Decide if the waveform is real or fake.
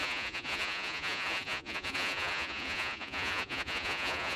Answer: fake